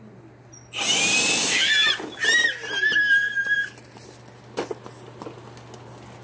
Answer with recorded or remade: recorded